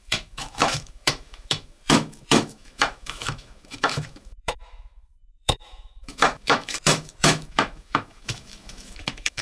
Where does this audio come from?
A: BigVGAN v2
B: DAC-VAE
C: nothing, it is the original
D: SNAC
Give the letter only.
B